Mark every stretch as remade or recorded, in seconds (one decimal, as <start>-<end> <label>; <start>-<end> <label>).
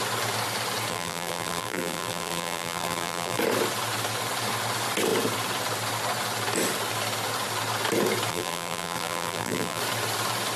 0.0-0.9 recorded; 0.9-3.4 remade; 3.4-8.3 recorded; 8.3-9.8 remade; 9.8-10.6 recorded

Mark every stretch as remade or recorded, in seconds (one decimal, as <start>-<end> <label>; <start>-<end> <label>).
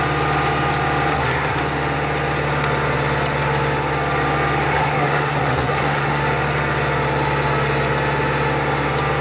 0.0-1.1 recorded; 1.1-1.6 remade; 1.6-4.7 recorded; 4.7-6.2 remade; 6.2-9.2 recorded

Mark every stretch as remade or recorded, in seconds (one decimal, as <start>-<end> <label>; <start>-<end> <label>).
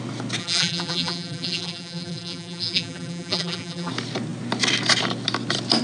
0.0-0.4 recorded; 0.4-3.9 remade; 3.9-5.8 recorded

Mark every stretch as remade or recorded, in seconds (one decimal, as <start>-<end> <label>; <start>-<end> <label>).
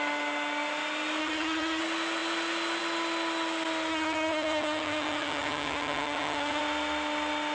0.0-1.2 recorded; 1.2-1.8 remade; 1.8-3.9 recorded; 3.9-6.6 remade; 6.6-7.5 recorded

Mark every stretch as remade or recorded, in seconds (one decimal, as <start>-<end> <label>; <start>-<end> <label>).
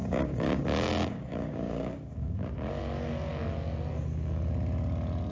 0.0-2.5 remade; 2.5-5.3 recorded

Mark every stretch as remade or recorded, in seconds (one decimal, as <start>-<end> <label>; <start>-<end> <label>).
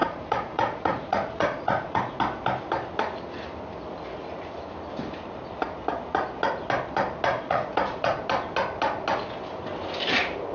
0.0-2.2 remade; 2.2-7.3 recorded; 7.3-8.2 remade; 8.2-10.5 recorded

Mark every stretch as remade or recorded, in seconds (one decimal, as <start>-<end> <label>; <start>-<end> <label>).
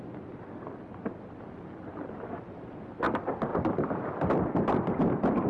0.0-3.5 recorded; 3.5-5.0 remade; 5.0-5.5 recorded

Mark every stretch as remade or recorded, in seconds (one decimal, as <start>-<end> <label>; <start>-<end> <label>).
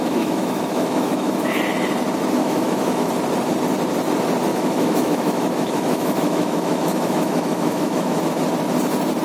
0.0-1.6 remade; 1.6-2.4 recorded; 2.4-3.1 remade; 3.1-4.5 recorded; 4.5-8.2 remade; 8.2-9.2 recorded